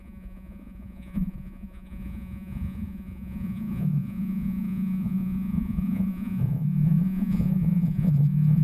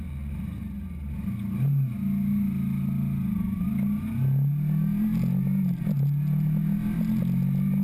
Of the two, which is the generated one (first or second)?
first